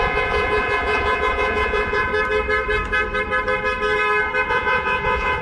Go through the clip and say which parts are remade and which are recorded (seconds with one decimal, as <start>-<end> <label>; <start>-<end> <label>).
0.0-2.1 remade; 2.1-4.5 recorded; 4.5-5.4 remade